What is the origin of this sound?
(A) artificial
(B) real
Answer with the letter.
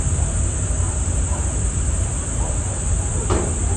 A